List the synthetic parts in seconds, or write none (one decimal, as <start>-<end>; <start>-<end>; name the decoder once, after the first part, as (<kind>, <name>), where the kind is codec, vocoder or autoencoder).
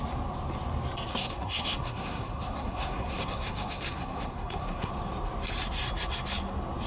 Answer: 1.1-4.9 (codec, SNAC)